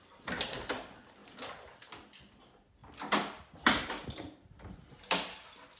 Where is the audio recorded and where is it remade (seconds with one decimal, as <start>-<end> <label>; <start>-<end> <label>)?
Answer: 0.0-5.8 recorded